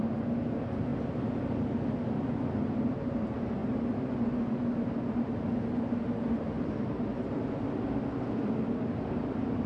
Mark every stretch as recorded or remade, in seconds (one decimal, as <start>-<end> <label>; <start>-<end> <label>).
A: 0.0-0.9 remade; 0.9-2.8 recorded; 2.8-3.6 remade; 3.6-4.8 recorded; 4.8-7.1 remade; 7.1-8.2 recorded; 8.2-9.7 remade